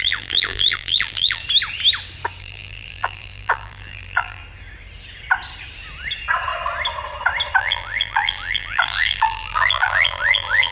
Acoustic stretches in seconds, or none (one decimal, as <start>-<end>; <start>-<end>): 1.4-2.4; 4.4-7.6

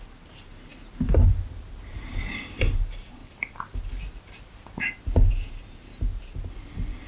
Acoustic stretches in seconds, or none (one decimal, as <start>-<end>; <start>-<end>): 0.7-1.5; 3.2-5.3; 6.1-7.1

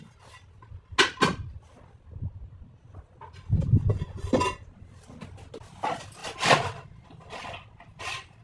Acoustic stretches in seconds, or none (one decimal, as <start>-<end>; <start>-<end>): 0.0-3.9; 4.7-8.4

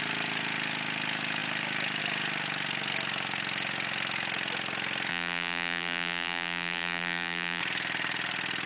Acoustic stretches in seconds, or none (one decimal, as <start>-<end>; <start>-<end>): 0.0-5.1; 7.6-8.7

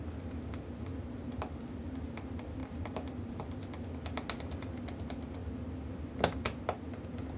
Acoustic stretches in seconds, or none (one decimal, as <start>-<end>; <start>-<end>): 0.0-7.4

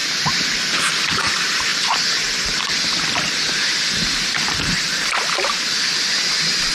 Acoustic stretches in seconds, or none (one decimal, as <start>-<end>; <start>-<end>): 0.9-6.7

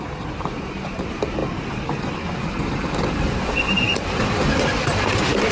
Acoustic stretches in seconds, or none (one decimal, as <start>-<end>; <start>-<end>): 1.4-4.6